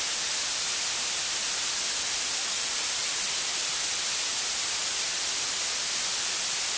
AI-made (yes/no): no